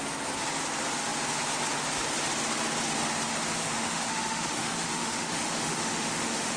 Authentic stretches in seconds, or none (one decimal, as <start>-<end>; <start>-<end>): 0.0-3.6